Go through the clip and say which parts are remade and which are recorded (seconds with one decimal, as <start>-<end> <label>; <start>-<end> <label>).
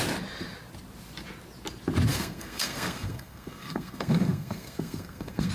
0.0-2.1 recorded; 2.1-5.5 remade